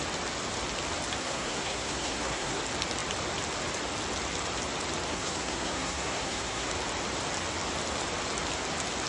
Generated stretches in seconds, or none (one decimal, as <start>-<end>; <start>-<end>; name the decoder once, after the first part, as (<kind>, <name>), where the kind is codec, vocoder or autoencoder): 1.2-2.6 (codec, SNAC); 5.1-6.7